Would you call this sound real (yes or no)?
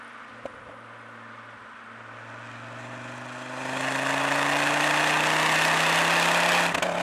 yes